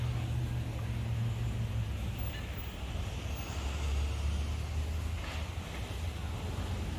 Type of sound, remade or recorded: recorded